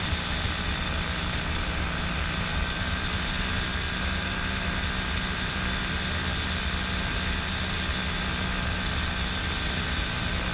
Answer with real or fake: real